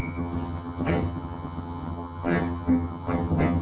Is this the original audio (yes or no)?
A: no